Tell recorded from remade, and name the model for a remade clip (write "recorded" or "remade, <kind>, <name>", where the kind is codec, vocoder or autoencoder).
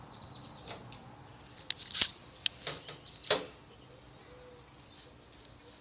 recorded